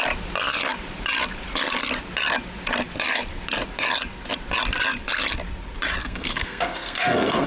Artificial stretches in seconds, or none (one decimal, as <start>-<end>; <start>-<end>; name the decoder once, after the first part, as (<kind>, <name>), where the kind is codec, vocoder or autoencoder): 6.0-7.5 (codec, SNAC)